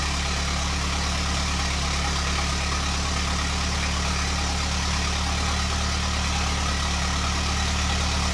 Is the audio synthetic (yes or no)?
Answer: no